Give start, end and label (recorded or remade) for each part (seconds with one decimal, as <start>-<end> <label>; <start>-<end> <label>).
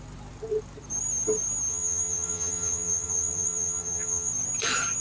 0.0-1.7 recorded; 1.7-4.3 remade; 4.3-5.0 recorded